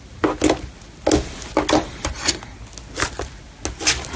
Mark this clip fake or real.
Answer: real